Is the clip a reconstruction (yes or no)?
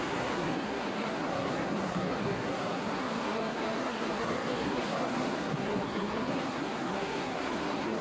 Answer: yes